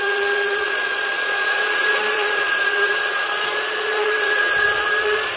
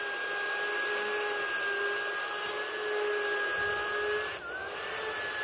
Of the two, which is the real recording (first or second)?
second